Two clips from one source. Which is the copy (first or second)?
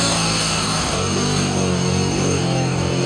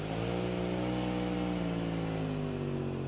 first